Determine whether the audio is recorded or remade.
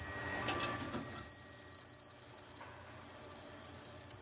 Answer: recorded